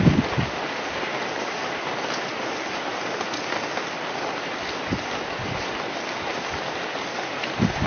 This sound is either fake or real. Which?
real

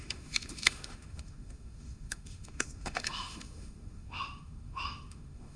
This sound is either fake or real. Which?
fake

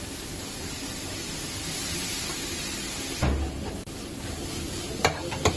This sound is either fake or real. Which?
real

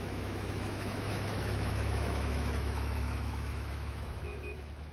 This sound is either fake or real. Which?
fake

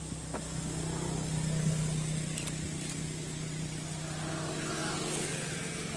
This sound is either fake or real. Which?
real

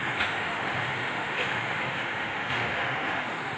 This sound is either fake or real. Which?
fake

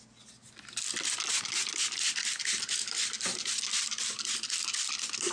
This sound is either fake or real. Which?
real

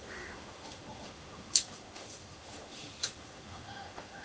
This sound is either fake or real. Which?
fake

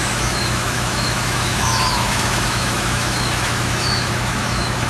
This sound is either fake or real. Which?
fake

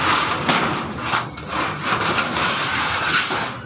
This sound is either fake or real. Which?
real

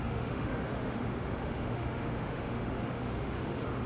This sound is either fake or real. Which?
fake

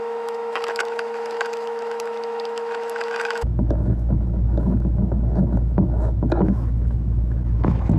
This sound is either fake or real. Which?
fake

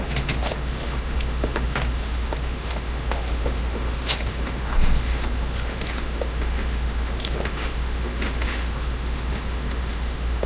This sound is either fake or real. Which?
fake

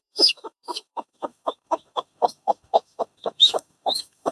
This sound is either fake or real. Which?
fake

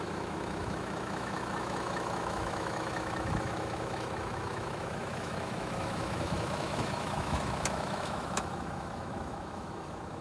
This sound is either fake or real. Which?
fake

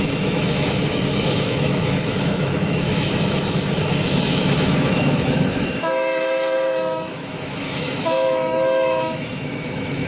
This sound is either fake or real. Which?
fake